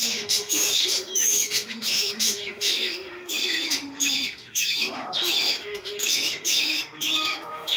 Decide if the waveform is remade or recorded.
remade